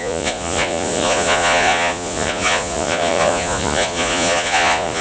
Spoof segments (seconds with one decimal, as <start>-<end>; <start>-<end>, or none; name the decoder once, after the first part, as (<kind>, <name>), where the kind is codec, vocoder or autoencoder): 0.0-5.0 (vocoder, Vocos)